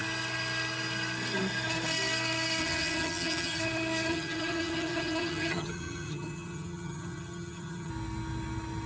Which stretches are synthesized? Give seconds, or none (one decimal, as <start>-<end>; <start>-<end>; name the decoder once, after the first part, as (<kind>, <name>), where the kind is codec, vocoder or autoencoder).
2.6-3.6 (vocoder, HiFi-GAN); 4.1-7.9